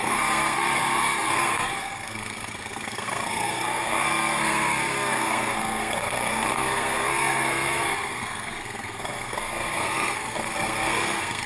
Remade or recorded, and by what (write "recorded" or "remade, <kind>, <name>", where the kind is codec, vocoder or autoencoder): remade, codec, SNAC